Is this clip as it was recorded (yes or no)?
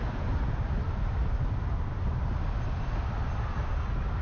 yes